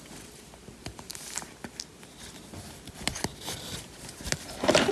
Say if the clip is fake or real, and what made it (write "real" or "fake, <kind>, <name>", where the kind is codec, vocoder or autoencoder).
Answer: real